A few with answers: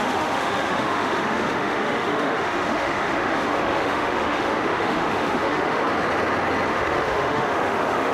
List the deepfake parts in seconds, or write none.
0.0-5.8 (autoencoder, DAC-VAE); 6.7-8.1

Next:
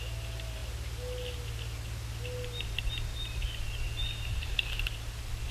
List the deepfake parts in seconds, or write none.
none

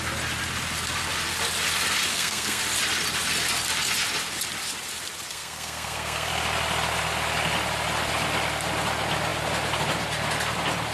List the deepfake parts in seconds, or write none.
2.1-2.6 (codec, SNAC); 5.3-6.3